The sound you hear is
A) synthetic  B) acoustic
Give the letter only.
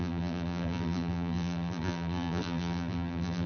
A